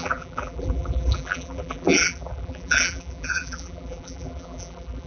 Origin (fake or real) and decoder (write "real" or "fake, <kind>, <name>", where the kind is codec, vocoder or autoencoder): fake, vocoder, BigVGAN v2